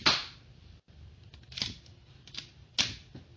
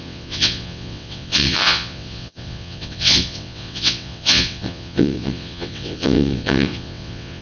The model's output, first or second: second